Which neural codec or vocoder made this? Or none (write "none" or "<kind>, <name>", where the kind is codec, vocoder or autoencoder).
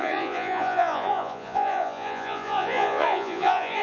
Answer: vocoder, Vocos